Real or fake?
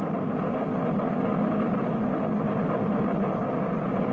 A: real